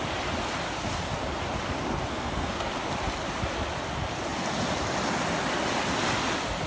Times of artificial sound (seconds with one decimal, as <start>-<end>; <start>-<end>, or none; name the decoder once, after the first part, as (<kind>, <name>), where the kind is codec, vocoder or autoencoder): 2.1-2.7 (codec, SNAC)